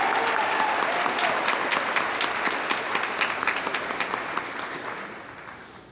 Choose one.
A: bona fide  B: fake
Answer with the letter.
A